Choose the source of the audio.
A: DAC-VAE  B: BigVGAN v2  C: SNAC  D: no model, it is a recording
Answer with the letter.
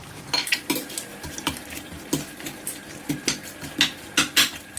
D